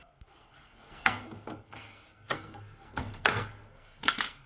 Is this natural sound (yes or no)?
no